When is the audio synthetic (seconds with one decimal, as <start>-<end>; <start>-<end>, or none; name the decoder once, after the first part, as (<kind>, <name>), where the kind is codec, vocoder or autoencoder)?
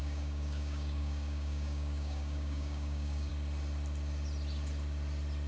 0.0-3.3 (codec, DAC)